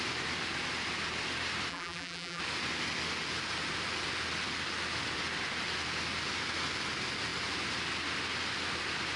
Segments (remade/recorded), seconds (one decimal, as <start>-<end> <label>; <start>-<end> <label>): 0.0-1.7 recorded; 1.7-2.4 remade; 2.4-9.2 recorded